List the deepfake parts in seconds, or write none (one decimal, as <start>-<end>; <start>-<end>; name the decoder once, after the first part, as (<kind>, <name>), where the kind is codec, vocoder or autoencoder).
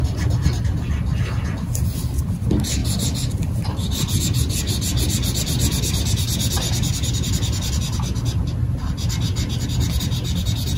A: 2.8-4.2 (vocoder, BigVGAN v2)